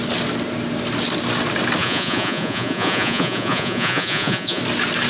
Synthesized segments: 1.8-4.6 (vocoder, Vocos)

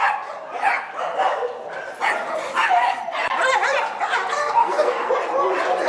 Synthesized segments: 4.4-5.1 (codec, SNAC)

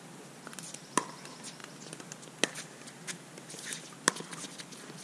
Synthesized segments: none

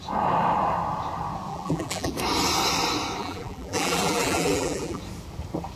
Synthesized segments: 1.5-2.1 (vocoder, BigVGAN v2); 3.2-5.0

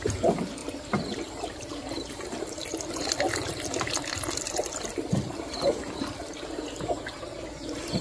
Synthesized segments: 0.6-5.4 (vocoder, BigVGAN v2)

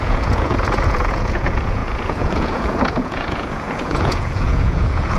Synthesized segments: 0.0-5.2 (vocoder, Vocos)

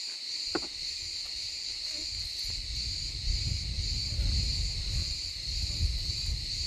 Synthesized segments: 5.0-6.1 (vocoder, BigVGAN v2)